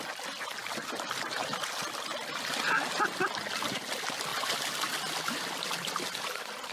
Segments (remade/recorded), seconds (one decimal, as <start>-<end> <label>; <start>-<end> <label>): 0.0-6.7 recorded